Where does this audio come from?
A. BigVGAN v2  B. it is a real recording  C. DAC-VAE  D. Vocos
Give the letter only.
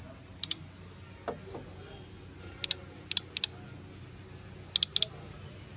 B